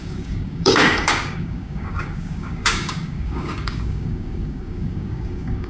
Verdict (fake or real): fake